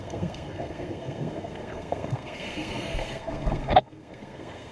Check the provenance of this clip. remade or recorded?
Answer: remade